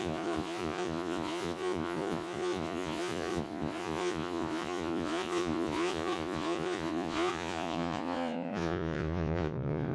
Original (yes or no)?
no